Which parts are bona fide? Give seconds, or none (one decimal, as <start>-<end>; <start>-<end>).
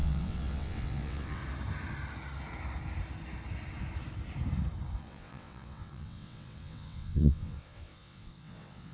1.4-5.0